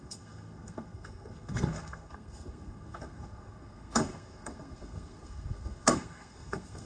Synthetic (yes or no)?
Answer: yes